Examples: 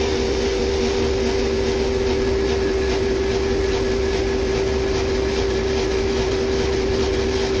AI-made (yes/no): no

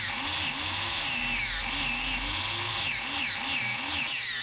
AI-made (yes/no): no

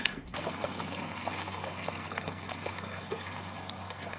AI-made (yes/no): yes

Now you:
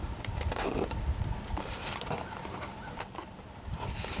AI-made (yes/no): no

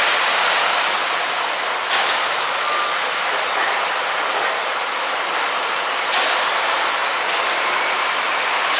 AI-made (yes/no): yes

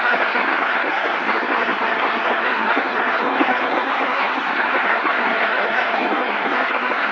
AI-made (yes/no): yes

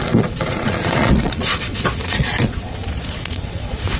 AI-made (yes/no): yes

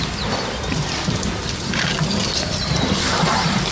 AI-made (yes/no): no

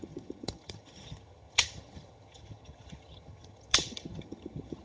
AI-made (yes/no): yes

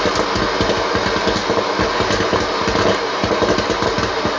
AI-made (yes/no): no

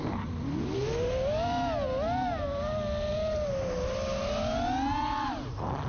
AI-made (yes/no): no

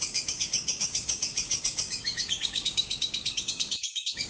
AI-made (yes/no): yes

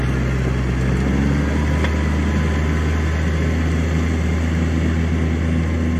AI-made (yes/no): no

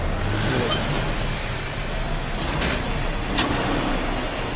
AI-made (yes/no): no